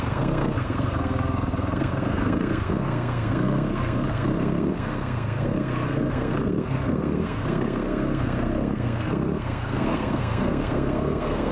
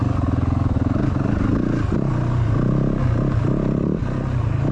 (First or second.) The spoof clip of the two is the first